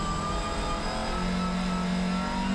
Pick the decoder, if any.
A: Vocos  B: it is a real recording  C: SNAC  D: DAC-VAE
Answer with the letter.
B